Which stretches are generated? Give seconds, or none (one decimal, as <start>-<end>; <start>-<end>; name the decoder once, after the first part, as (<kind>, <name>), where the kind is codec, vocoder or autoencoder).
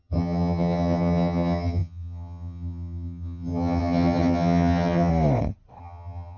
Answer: 0.0-5.1 (vocoder, HiFi-GAN); 5.8-6.4